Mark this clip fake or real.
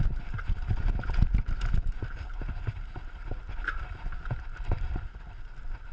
real